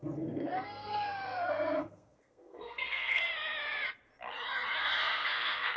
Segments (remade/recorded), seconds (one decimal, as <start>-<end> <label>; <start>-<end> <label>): 0.0-3.2 remade; 3.2-4.8 recorded; 4.8-5.8 remade